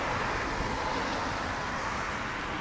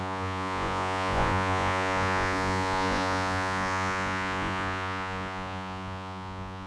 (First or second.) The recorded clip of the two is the first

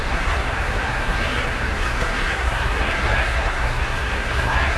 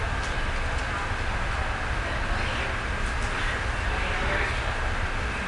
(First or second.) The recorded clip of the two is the second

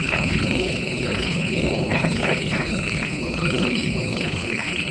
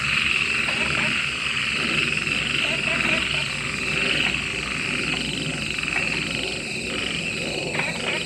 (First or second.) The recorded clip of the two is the second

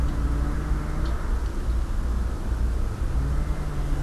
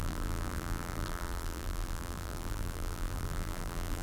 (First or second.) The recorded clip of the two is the first